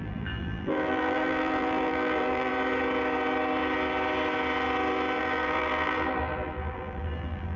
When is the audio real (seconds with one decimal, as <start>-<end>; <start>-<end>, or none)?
2.5-5.2